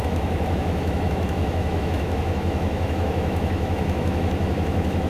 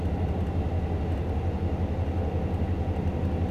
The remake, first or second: first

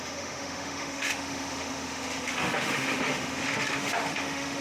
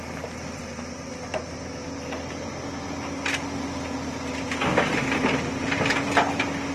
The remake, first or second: first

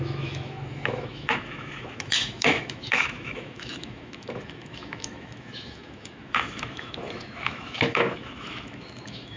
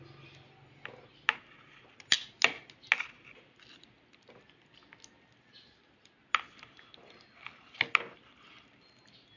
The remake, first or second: first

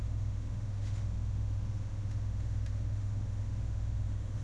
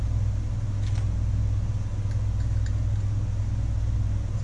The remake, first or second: first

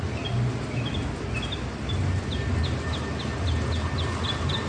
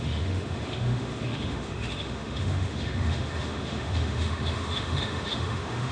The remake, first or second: second